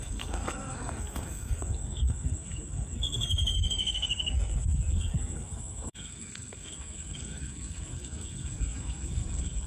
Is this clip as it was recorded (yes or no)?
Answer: no